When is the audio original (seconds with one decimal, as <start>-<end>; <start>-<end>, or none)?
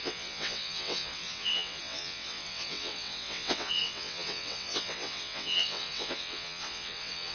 none